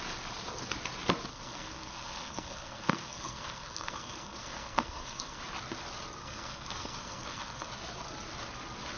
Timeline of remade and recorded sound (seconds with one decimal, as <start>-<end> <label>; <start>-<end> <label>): 0.0-1.3 recorded; 1.3-5.4 remade; 5.4-6.2 recorded; 6.2-7.7 remade; 7.7-9.0 recorded